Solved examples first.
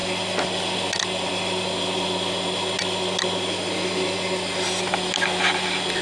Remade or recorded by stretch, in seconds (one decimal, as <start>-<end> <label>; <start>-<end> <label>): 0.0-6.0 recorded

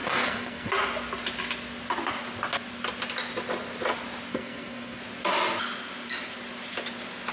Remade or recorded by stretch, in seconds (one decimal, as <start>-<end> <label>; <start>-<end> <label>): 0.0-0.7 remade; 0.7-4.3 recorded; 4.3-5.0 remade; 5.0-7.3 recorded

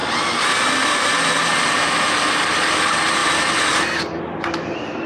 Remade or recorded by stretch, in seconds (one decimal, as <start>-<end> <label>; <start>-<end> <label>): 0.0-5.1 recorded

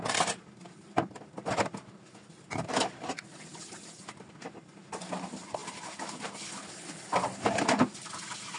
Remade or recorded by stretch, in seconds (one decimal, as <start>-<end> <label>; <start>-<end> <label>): 0.0-8.6 recorded

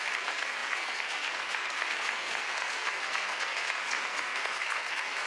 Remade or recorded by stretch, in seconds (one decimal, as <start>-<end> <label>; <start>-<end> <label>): 0.0-5.3 remade